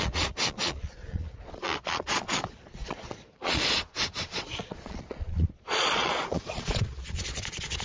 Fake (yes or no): yes